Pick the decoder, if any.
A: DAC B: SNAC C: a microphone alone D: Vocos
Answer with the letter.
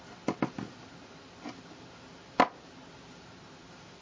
C